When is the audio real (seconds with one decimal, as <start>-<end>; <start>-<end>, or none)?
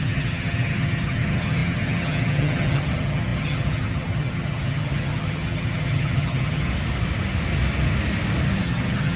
6.7-8.6